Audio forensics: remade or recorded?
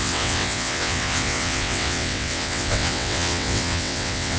remade